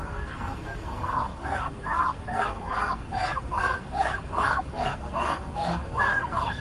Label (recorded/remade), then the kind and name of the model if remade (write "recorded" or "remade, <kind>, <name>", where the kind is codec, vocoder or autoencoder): remade, codec, SNAC